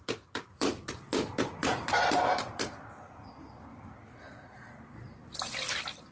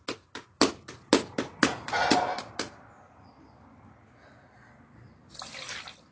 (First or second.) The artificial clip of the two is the first